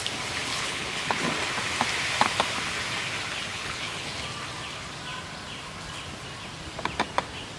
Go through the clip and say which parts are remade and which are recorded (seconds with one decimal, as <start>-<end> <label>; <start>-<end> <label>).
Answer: 0.0-0.5 recorded; 0.5-1.2 remade; 1.2-3.5 recorded; 3.5-4.1 remade; 4.1-7.6 recorded